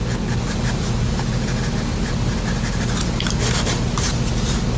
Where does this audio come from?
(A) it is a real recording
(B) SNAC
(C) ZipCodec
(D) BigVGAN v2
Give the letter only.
A